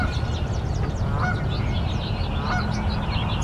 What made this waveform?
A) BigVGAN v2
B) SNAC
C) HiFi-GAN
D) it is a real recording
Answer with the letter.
D